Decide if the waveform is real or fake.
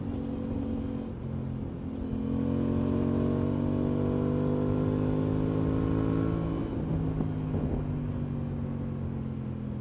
real